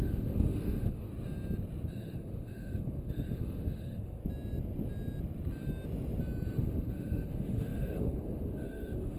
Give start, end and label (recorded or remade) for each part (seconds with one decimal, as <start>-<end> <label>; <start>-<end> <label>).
0.0-1.1 remade; 1.1-1.9 recorded; 1.9-4.2 remade; 4.2-6.6 recorded; 6.6-9.2 remade